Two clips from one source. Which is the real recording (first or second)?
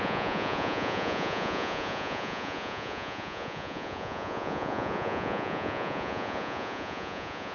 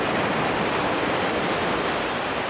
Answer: second